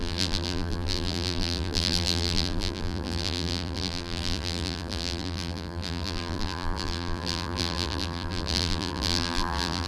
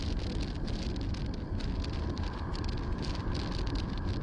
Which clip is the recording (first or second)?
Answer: second